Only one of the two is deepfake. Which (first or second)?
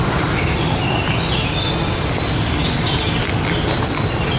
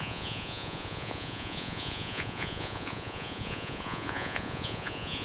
second